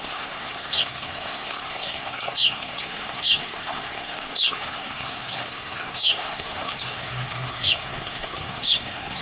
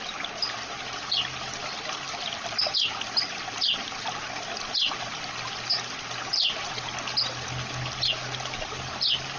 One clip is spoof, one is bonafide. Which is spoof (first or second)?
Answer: first